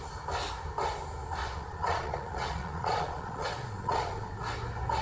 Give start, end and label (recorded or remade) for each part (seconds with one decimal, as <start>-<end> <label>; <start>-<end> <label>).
0.0-1.4 recorded; 1.4-4.4 remade; 4.4-5.0 recorded